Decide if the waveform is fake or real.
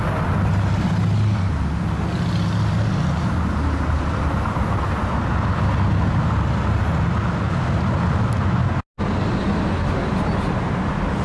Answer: real